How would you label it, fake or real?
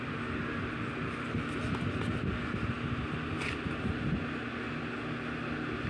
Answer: real